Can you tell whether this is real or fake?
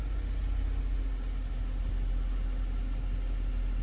real